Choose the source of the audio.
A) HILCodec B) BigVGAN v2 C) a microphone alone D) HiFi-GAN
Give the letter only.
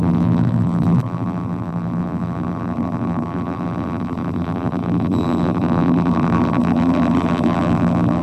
B